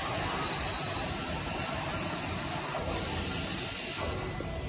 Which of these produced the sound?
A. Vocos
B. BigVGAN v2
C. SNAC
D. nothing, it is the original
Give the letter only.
D